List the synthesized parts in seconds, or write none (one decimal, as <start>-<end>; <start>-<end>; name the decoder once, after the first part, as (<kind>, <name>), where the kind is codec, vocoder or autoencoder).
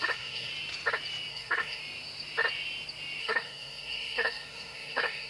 0.0-0.5 (codec, SNAC); 1.3-1.8; 3.2-5.3